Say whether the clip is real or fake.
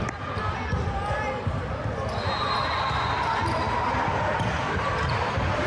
real